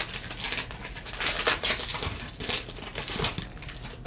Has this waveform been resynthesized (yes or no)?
no